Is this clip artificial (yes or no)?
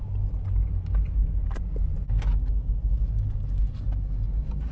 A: no